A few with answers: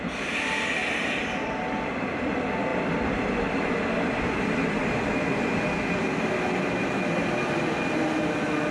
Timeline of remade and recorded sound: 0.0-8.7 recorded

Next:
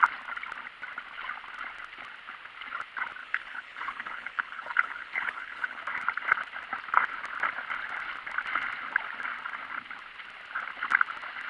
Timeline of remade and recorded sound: 0.0-3.2 recorded; 3.2-5.8 remade; 5.8-11.5 recorded

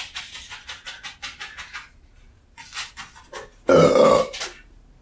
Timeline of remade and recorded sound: 0.0-5.0 recorded

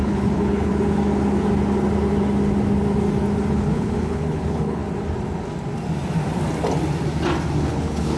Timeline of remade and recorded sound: 0.0-0.7 remade; 0.7-3.5 recorded; 3.5-4.8 remade; 4.8-7.6 recorded; 7.6-8.2 remade

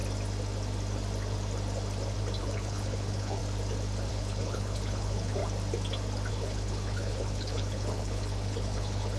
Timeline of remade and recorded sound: 0.0-2.4 recorded; 2.4-3.4 remade; 3.4-4.1 recorded; 4.1-5.4 remade; 5.4-6.3 recorded; 6.3-9.2 remade

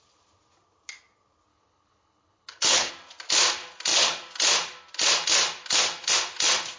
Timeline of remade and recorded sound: 0.0-1.5 recorded; 1.5-2.9 remade; 2.9-6.8 recorded